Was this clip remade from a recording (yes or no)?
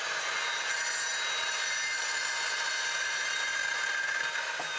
no